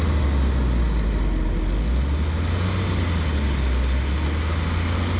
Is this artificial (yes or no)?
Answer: no